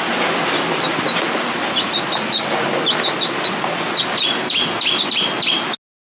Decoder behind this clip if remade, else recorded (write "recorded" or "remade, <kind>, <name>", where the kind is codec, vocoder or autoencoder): recorded